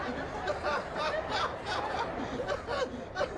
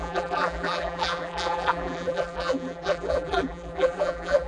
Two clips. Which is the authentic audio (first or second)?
first